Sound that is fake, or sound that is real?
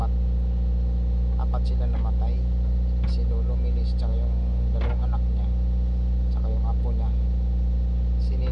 real